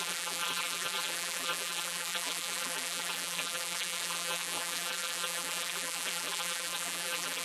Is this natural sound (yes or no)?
no